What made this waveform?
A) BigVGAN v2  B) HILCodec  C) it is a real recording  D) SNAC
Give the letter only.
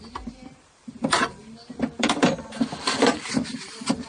A